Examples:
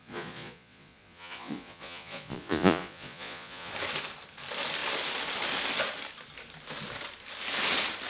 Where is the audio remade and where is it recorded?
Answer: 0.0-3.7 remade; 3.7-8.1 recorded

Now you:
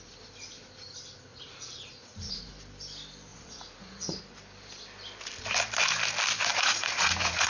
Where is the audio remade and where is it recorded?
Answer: 0.0-1.3 recorded; 1.3-2.5 remade; 2.5-3.3 recorded; 3.3-4.2 remade; 4.2-6.5 recorded; 6.5-7.5 remade

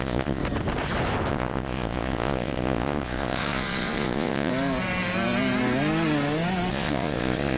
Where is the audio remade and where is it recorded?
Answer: 0.0-0.4 remade; 0.4-1.3 recorded; 1.3-4.5 remade; 4.5-6.7 recorded; 6.7-7.6 remade